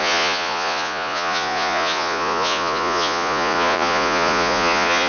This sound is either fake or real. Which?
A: fake